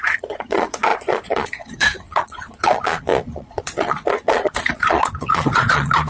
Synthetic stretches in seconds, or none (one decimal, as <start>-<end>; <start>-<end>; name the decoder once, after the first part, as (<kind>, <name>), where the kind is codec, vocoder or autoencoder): 0.0-6.1 (vocoder, Vocos)